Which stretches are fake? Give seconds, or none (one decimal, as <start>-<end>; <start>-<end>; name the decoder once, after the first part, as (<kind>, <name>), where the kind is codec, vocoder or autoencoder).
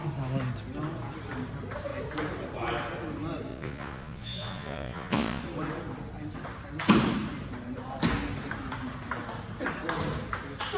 3.5-5.4 (vocoder, Vocos)